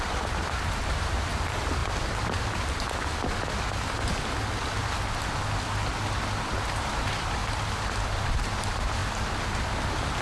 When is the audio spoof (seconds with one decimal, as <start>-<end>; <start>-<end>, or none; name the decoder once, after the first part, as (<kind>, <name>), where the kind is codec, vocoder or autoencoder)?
0.0-1.8 (vocoder, BigVGAN v2); 6.6-7.4; 8.2-9.0